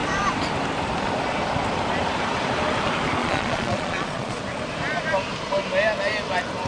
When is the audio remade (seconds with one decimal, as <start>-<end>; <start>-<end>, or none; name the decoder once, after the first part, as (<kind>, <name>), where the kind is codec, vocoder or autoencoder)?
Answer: 3.2-4.4 (vocoder, Vocos)